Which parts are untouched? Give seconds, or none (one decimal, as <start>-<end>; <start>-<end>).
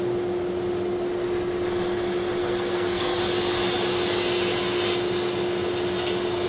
0.0-2.4; 3.2-6.5